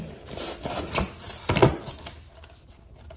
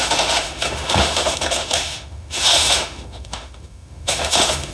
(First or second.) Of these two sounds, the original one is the first